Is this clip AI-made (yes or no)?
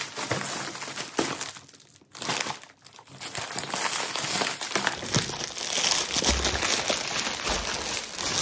no